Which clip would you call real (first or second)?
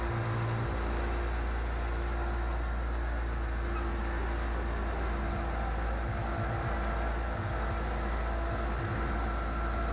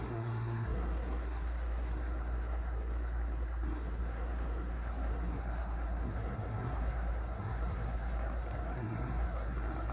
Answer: first